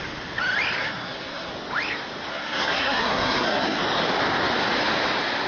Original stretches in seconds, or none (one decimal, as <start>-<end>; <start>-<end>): 0.0-0.8; 1.5-2.3; 3.8-5.5